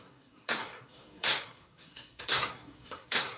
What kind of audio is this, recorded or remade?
remade